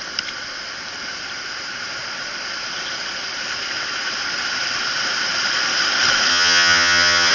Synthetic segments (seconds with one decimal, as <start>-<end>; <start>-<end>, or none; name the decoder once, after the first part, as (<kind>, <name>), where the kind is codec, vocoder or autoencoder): 6.3-7.3 (vocoder, HiFi-GAN)